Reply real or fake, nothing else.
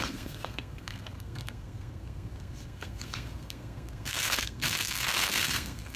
fake